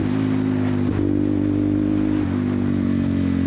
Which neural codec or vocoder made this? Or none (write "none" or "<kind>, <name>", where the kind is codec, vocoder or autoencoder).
none